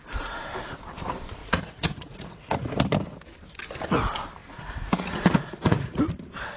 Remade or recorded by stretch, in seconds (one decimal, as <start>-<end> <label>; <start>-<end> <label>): 0.0-1.4 recorded; 1.4-2.7 remade; 2.7-4.4 recorded; 4.4-6.0 remade; 6.0-6.6 recorded